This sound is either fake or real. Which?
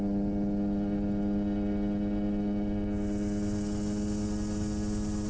real